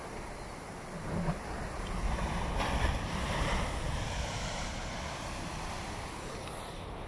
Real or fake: real